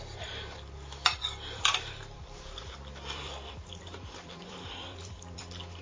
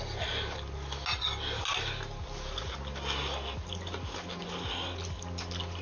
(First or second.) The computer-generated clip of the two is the first